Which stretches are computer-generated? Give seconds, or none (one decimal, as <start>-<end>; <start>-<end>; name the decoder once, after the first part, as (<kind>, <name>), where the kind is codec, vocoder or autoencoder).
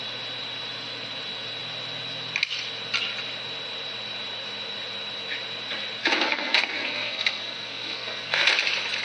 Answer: 6.0-8.5 (codec, SNAC)